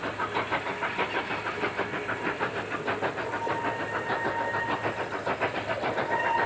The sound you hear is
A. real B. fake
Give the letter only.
A